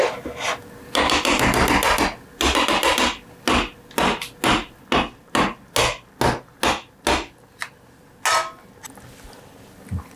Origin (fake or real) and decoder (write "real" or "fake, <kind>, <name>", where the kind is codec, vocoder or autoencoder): real